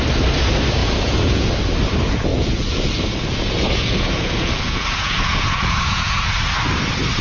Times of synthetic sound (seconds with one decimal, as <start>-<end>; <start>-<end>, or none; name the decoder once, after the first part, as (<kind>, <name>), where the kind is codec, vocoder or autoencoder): 0.8-1.5 (vocoder, Vocos); 2.3-6.3